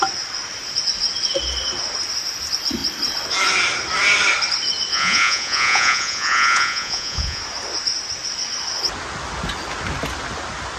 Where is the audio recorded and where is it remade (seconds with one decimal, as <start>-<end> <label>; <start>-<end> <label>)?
0.0-4.9 recorded; 4.9-7.4 remade; 7.4-10.8 recorded